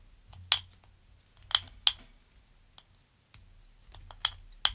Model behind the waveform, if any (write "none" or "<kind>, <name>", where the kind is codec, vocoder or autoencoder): none